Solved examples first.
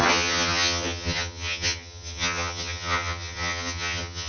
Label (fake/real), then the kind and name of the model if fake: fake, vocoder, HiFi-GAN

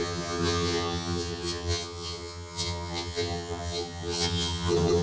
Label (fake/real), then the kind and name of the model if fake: fake, vocoder, HiFi-GAN